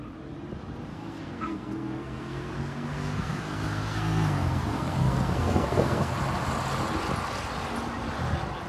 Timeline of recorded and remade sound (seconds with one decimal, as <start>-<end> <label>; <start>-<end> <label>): 0.0-0.9 recorded; 0.9-6.1 remade; 6.1-8.7 recorded